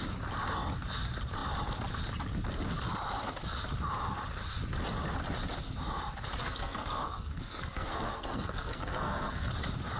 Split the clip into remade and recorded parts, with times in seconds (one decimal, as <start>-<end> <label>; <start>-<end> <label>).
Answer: 0.0-6.4 recorded; 6.4-9.5 remade; 9.5-10.0 recorded